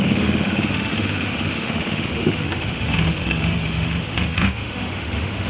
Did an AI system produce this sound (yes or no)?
yes